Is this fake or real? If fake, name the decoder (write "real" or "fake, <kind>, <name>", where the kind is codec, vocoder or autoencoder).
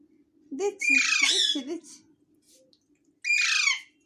real